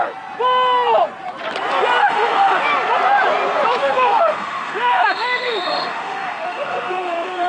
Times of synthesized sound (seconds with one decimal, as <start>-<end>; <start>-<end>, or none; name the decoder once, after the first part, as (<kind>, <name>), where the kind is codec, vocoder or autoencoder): 2.0-2.6 (autoencoder, DAC-VAE); 3.8-7.5